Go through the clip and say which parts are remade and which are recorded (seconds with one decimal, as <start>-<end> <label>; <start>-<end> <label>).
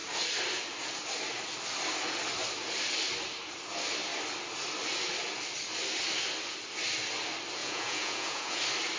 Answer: 0.0-7.6 recorded; 7.6-8.6 remade; 8.6-9.0 recorded